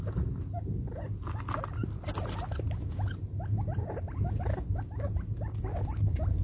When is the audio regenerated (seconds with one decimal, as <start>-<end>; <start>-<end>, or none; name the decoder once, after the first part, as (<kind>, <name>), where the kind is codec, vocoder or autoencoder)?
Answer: 1.8-5.6 (vocoder, BigVGAN v2)